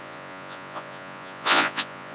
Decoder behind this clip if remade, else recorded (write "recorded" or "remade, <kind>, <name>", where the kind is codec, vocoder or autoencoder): remade, vocoder, Vocos